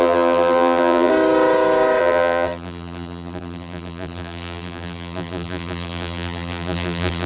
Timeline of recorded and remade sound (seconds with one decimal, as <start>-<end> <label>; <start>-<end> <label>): 0.0-1.1 remade; 1.1-2.0 recorded; 2.0-7.3 remade